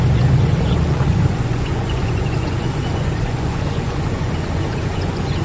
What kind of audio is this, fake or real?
fake